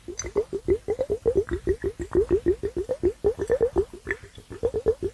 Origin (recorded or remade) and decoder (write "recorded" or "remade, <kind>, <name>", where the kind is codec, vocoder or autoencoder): recorded